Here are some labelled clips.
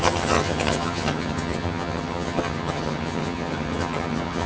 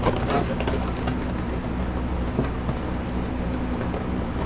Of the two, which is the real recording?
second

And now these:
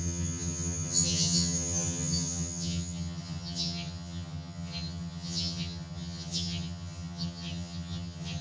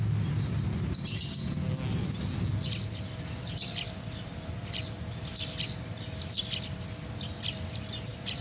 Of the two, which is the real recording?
second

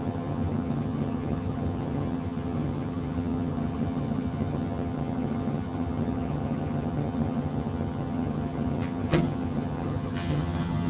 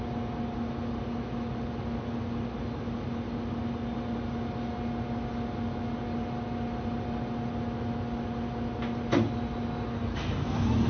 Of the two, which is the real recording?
second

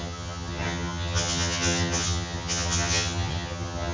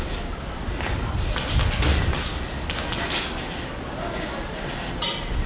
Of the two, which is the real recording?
second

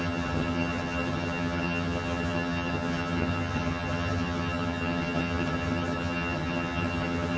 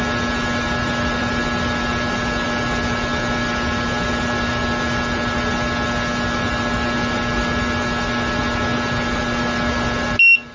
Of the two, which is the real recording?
second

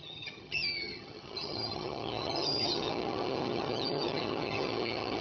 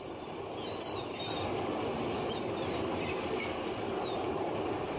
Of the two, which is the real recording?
second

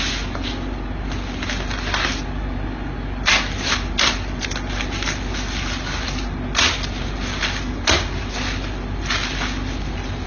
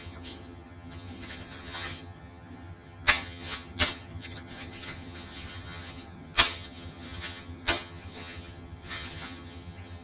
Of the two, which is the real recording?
first